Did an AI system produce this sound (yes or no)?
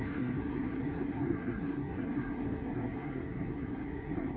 yes